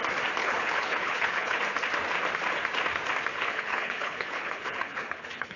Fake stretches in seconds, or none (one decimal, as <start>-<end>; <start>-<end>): 0.4-1.6; 3.3-5.6